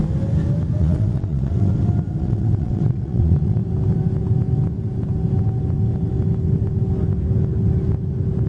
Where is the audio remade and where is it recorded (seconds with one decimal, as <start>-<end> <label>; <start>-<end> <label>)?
0.0-0.8 recorded; 0.8-1.7 remade; 1.7-2.2 recorded; 2.2-3.6 remade; 3.6-8.5 recorded